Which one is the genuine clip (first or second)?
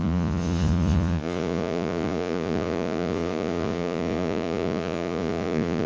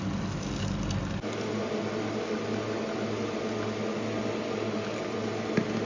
second